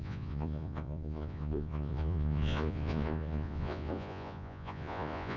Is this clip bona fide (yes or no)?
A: no